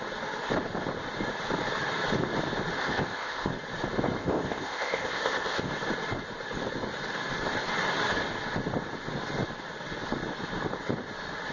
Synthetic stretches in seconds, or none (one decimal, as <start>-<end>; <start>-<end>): 2.8-3.5; 4.2-5.7